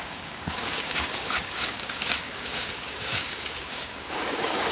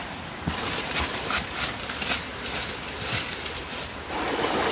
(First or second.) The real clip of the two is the second